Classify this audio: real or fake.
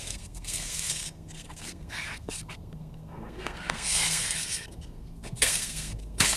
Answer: fake